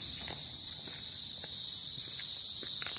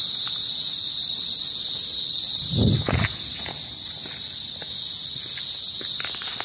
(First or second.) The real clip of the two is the second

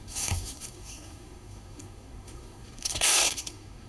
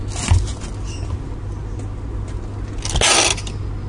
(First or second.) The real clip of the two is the second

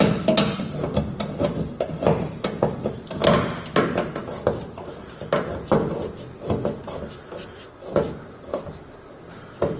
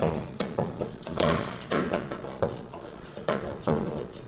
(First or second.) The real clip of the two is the first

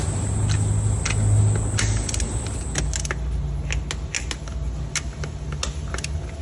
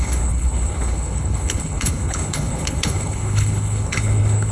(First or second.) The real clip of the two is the first